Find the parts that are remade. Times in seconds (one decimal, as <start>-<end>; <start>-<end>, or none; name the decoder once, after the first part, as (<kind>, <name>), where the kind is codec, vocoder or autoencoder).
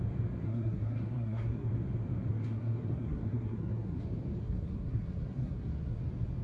0.4-1.7 (codec, SNAC); 2.3-4.0; 4.4-6.0